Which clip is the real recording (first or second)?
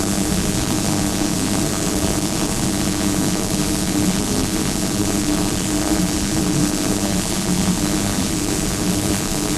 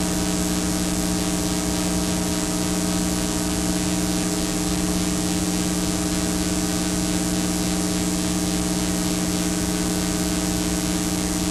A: second